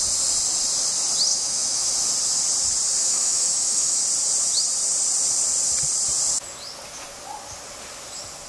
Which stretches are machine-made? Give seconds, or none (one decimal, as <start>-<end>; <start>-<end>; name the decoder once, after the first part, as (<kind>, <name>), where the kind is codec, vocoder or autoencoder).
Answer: 1.3-1.9 (autoencoder, DAC-VAE); 3.0-4.0